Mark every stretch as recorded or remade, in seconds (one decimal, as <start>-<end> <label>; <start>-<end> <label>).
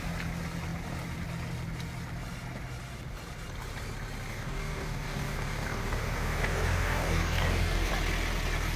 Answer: 0.0-4.3 recorded; 4.3-7.9 remade; 7.9-8.8 recorded